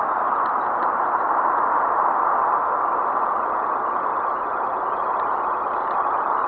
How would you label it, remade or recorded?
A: recorded